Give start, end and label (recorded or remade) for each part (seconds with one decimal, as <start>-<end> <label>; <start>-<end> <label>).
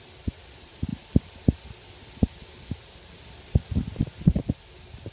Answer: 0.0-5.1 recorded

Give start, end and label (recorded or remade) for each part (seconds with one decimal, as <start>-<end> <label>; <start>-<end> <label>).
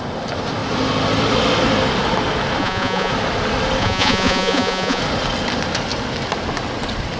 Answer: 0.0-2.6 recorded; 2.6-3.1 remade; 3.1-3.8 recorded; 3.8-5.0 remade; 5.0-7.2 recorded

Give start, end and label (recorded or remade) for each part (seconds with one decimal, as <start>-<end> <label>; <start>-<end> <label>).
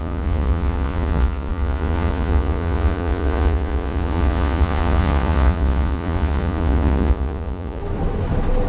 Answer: 0.0-7.8 remade; 7.8-8.7 recorded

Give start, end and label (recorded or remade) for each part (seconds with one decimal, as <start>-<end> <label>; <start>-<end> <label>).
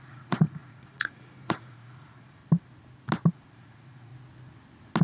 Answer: 0.0-2.4 remade; 2.4-3.3 recorded; 3.3-4.1 remade; 4.1-5.0 recorded